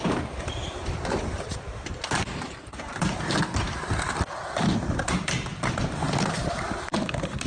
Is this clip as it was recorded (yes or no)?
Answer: no